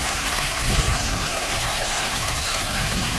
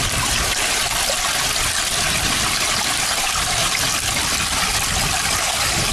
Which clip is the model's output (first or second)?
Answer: first